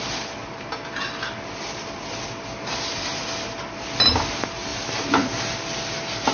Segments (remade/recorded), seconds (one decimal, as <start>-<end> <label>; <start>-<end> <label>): 0.0-6.3 recorded